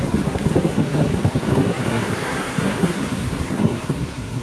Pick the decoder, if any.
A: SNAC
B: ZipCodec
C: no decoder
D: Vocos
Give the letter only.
A